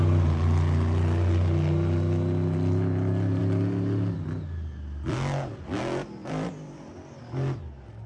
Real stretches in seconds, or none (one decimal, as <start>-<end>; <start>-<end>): 0.0-6.2; 7.2-8.1